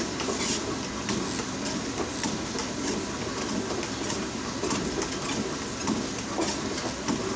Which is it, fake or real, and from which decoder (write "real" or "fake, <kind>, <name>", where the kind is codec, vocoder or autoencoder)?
real